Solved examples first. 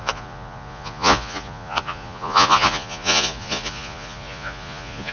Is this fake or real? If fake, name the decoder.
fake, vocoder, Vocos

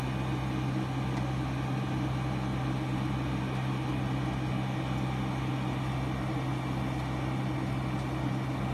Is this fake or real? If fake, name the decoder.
real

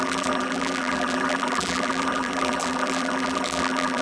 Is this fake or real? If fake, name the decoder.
fake, vocoder, BigVGAN v2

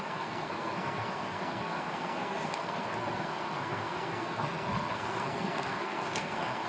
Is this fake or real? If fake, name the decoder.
fake, codec, SNAC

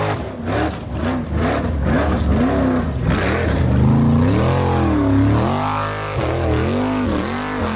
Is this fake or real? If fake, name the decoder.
real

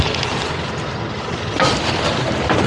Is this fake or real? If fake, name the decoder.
real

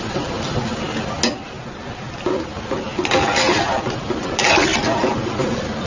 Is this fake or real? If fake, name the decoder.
real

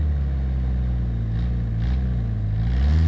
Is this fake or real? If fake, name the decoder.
real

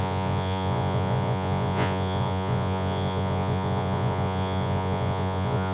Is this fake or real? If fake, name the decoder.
fake, vocoder, Vocos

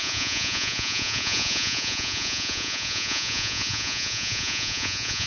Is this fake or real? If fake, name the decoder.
fake, vocoder, Vocos